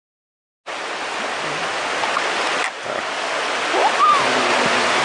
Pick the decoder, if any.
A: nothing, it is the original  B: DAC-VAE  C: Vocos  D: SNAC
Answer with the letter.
A